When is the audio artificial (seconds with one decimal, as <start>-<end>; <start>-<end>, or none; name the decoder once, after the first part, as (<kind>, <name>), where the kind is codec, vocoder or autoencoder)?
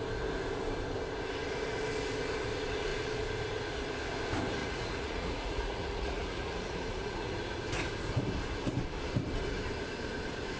4.6-7.3 (vocoder, Vocos)